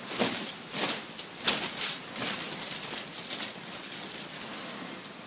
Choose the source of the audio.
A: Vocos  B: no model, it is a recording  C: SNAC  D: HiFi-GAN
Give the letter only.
B